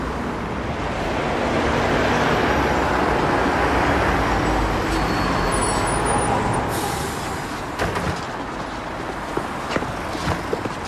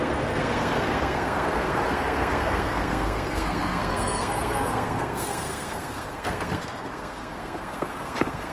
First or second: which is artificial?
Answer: second